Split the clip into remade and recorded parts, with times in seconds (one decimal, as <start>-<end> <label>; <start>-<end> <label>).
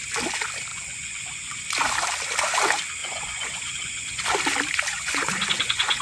0.0-0.7 recorded; 0.7-1.6 remade; 1.6-3.0 recorded; 3.0-4.2 remade; 4.2-4.9 recorded; 4.9-6.0 remade